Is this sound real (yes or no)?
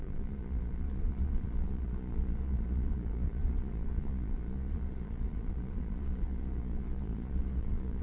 no